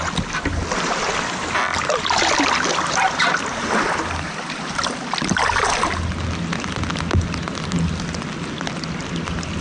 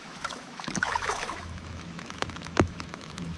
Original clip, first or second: first